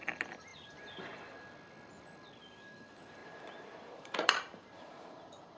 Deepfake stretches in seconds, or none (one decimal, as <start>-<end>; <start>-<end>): 3.2-5.6